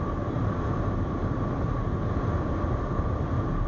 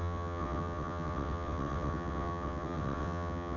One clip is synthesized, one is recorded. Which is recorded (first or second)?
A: first